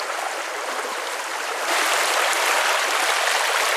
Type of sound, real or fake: real